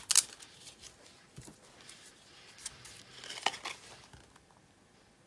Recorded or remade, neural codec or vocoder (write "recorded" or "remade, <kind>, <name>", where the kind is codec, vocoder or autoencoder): recorded